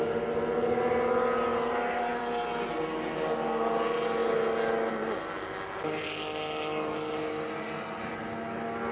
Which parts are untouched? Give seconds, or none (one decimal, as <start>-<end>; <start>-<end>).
0.0-1.5; 2.2-8.9